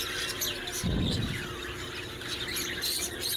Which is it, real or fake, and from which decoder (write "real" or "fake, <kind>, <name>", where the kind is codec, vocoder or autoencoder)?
real